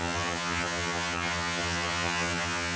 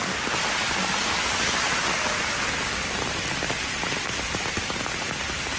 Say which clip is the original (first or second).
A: second